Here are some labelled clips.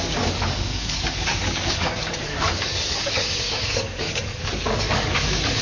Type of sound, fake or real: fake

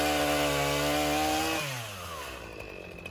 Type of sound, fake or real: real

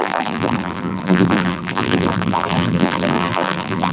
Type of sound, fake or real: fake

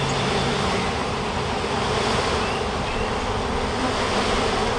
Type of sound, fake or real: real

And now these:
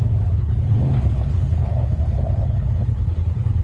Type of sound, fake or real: fake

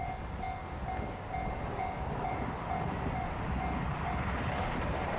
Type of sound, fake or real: real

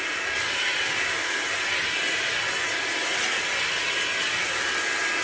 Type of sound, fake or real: real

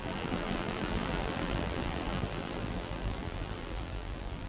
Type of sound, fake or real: fake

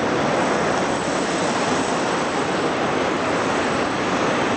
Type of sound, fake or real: real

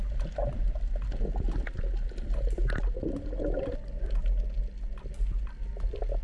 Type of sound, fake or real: real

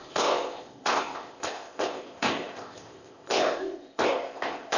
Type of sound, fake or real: fake